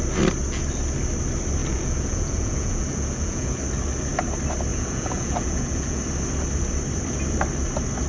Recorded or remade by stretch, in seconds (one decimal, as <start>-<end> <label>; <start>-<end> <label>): 0.0-1.6 recorded; 1.6-3.6 remade; 3.6-4.7 recorded; 4.7-6.0 remade; 6.0-8.1 recorded